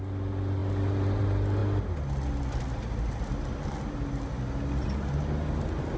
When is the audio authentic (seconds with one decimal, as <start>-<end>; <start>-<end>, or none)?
0.0-6.0